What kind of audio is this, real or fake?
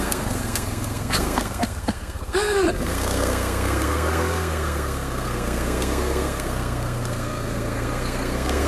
fake